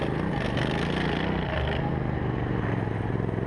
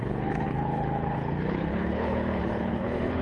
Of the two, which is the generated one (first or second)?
second